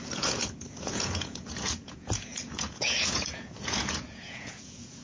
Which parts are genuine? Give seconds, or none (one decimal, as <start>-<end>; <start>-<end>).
none

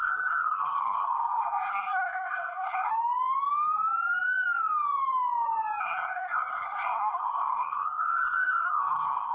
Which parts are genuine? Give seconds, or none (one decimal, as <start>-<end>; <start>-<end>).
2.9-5.8

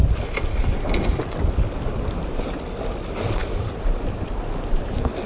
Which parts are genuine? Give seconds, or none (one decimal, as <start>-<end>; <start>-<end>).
0.0-3.4; 4.4-5.3

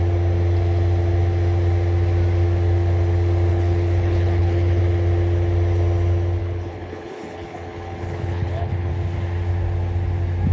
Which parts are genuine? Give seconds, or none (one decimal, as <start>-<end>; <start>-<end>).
0.0-3.5; 4.8-6.4; 8.9-10.5